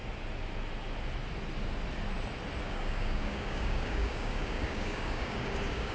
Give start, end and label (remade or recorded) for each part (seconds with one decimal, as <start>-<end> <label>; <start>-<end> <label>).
0.0-2.6 recorded; 2.6-5.9 remade